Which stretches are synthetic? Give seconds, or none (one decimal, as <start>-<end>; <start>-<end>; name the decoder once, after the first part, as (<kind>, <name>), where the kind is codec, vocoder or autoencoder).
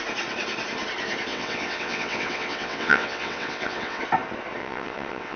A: 1.3-4.0 (vocoder, WaveNeXt); 4.6-5.4